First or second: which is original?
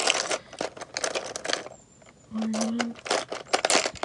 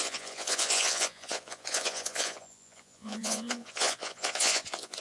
first